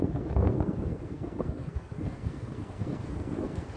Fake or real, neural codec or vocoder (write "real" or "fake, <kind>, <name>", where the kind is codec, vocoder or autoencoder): fake, codec, SNAC